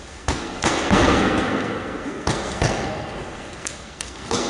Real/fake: fake